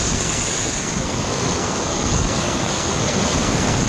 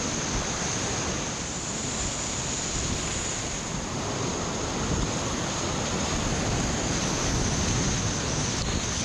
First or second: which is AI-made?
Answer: first